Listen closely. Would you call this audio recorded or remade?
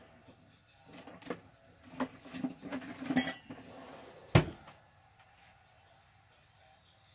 recorded